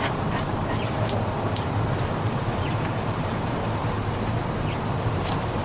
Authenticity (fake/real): fake